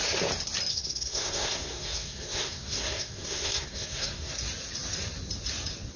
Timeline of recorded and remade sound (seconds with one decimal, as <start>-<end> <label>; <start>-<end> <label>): 0.0-0.7 recorded; 0.7-4.3 remade; 4.3-6.0 recorded